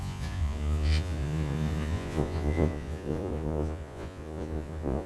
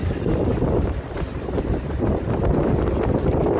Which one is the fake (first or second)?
first